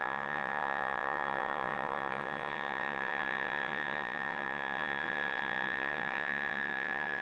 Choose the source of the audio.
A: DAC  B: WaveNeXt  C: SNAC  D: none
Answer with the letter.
B